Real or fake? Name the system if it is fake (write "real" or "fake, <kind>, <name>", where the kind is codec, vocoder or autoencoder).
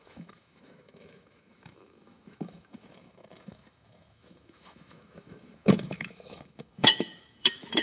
fake, autoencoder, DAC-VAE